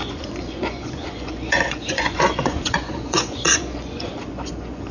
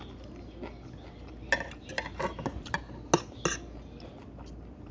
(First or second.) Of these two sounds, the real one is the second